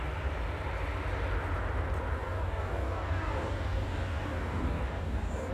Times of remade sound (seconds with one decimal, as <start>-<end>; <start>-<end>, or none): 2.2-5.5